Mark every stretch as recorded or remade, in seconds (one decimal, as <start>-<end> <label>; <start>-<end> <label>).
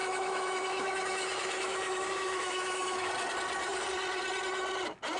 0.0-3.1 remade; 3.1-5.2 recorded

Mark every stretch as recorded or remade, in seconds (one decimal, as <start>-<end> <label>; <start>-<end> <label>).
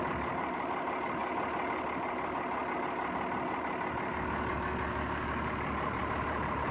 0.0-1.2 remade; 1.2-2.1 recorded; 2.1-2.6 remade; 2.6-4.5 recorded; 4.5-6.7 remade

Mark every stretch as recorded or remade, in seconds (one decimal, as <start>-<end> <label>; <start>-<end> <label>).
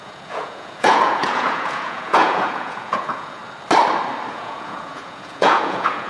0.0-3.4 remade; 3.4-4.3 recorded; 4.3-6.1 remade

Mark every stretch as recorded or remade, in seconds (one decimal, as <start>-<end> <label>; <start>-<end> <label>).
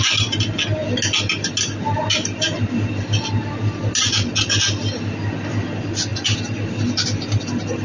0.0-7.8 recorded